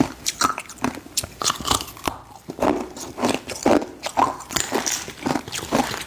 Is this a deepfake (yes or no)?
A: yes